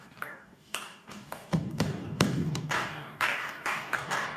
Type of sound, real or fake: fake